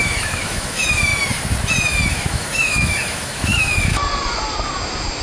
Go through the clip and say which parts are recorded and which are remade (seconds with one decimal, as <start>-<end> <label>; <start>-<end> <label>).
0.0-1.1 remade; 1.1-2.1 recorded; 2.1-4.0 remade; 4.0-5.2 recorded